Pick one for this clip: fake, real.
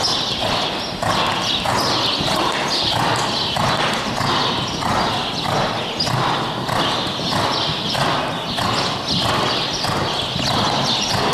real